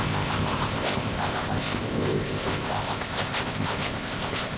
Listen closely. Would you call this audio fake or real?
fake